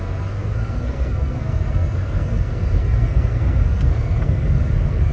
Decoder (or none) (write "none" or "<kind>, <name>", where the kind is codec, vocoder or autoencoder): codec, SNAC